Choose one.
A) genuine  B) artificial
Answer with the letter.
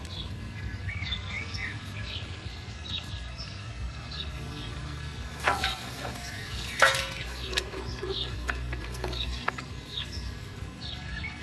B